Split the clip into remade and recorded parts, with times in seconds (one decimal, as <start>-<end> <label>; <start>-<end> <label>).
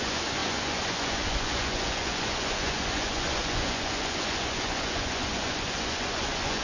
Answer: 0.0-6.6 remade